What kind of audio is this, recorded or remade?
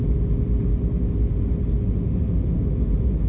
recorded